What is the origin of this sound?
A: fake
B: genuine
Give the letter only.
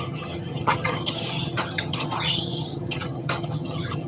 A